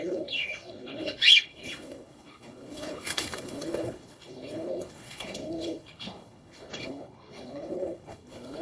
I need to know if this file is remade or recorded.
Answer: remade